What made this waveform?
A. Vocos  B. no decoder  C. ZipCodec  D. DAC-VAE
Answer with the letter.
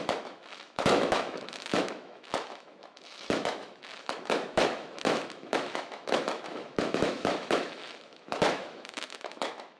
D